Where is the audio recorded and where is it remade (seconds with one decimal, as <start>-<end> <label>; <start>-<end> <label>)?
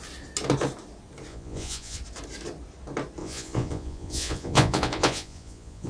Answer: 0.0-1.3 recorded; 1.3-2.0 remade; 2.0-3.2 recorded; 3.2-5.9 remade